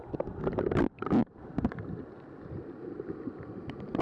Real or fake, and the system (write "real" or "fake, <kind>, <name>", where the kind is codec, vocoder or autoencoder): fake, vocoder, BigVGAN v2